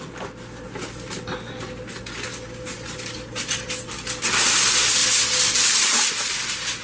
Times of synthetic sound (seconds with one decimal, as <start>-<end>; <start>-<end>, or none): none